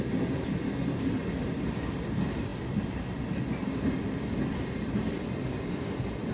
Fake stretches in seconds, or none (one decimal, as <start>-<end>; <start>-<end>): none